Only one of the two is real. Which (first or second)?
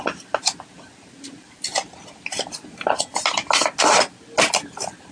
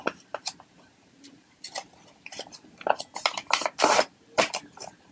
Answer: first